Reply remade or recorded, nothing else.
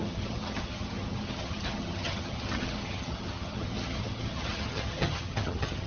remade